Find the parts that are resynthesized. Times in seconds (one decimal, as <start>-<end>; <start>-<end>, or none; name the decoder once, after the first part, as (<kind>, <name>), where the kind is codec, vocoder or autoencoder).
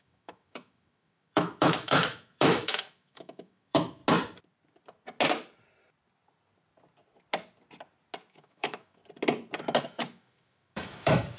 0.0-4.0 (autoencoder, DAC-VAE); 8.3-9.0; 9.8-11.4